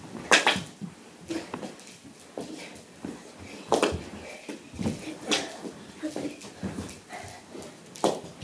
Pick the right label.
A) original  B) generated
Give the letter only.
A